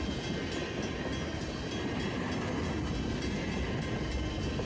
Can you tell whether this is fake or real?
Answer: real